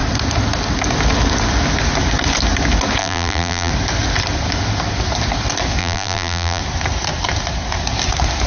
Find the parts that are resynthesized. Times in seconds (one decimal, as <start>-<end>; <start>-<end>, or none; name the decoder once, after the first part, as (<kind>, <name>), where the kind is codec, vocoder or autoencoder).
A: 3.0-3.7 (vocoder, BigVGAN v2); 5.8-6.6